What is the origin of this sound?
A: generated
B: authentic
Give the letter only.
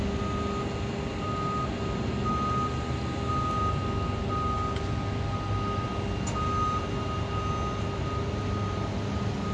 B